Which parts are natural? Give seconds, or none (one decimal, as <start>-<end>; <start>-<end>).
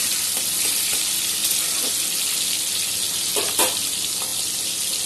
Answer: 0.0-5.1